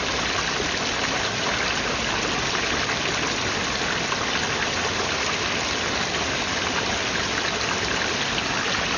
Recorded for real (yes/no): yes